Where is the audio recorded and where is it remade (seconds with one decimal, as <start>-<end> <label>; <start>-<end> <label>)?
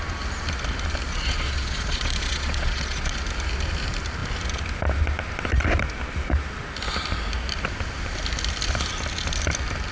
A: 0.0-1.1 recorded; 1.1-3.2 remade; 3.2-9.9 recorded